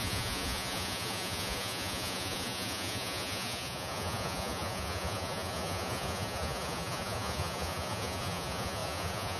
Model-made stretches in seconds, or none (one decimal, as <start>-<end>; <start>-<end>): 0.0-9.4